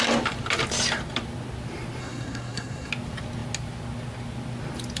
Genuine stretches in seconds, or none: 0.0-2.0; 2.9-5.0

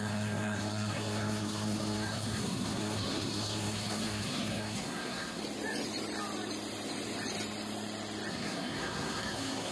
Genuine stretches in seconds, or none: 5.4-8.3

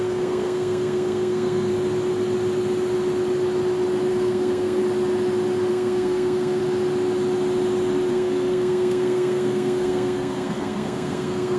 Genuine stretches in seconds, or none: 1.7-4.1; 4.8-5.7; 6.6-8.1

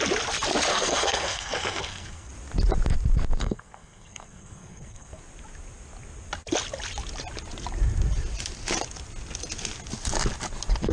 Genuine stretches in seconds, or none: 0.0-0.7; 2.3-3.4; 5.2-10.9

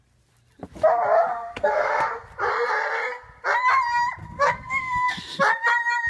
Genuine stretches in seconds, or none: 0.0-1.3; 2.0-4.2; 5.4-6.1

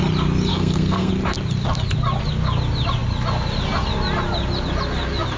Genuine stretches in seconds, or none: 0.0-0.5; 1.1-5.4